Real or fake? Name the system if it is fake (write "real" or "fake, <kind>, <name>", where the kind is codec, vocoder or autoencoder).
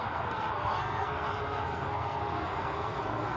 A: fake, codec, SNAC